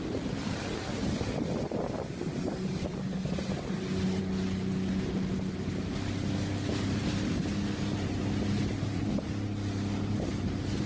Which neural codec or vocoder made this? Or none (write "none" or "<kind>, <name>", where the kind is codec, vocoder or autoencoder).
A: none